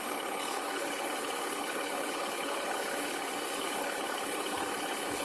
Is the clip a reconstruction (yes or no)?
yes